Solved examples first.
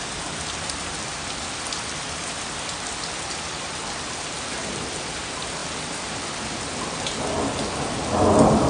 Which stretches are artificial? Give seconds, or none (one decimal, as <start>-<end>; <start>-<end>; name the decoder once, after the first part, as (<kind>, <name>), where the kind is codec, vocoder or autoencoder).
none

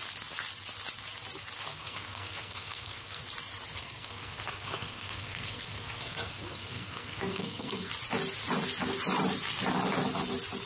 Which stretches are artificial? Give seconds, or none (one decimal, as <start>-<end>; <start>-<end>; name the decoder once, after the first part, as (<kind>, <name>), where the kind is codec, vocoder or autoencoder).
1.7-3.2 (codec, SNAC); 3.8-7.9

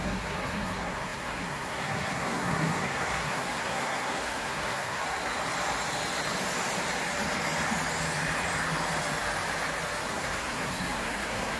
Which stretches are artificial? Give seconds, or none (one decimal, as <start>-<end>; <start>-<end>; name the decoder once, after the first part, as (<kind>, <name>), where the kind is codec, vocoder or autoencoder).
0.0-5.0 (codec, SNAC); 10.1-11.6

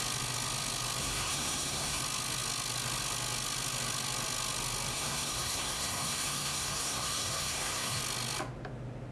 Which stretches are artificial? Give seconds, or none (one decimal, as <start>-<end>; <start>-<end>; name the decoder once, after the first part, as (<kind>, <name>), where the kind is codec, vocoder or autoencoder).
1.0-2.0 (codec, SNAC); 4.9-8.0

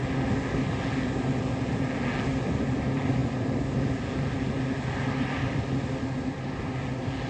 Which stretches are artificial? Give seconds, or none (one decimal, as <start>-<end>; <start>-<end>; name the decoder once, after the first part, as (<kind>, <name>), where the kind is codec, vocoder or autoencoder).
none